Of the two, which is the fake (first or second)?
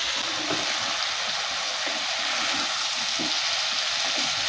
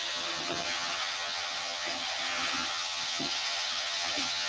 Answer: second